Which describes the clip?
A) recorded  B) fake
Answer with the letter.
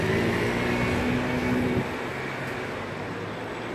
A